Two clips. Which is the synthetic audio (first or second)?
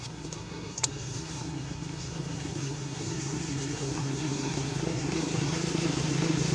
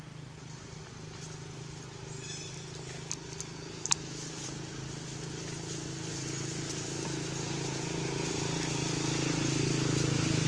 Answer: first